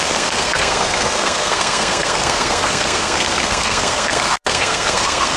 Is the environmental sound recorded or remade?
remade